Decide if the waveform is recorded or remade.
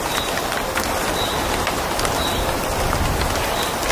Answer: recorded